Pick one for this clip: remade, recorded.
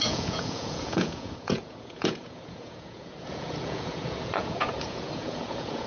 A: remade